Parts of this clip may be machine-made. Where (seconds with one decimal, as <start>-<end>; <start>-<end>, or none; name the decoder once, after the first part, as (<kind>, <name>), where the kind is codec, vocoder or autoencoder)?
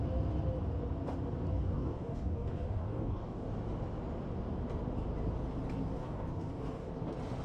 1.5-3.5 (codec, DAC); 5.8-6.9